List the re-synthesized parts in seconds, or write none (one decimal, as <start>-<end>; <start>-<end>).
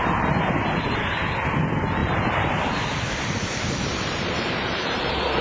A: 2.0-5.4